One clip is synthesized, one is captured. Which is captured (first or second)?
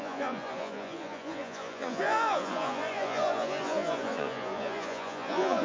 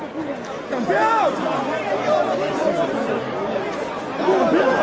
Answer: second